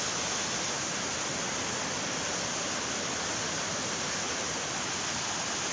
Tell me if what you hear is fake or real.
real